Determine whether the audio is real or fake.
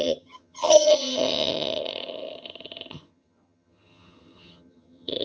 fake